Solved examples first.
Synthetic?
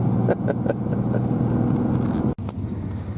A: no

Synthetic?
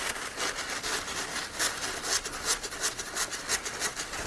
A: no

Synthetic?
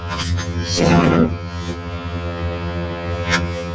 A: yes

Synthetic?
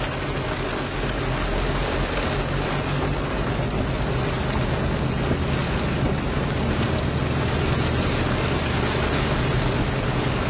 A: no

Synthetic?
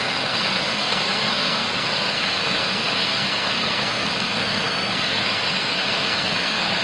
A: yes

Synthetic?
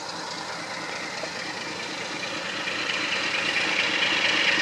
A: no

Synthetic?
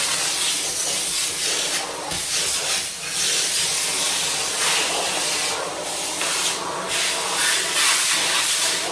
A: no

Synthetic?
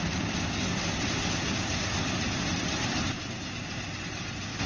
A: no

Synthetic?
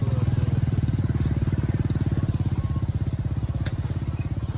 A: no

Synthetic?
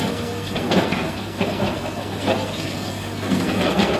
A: yes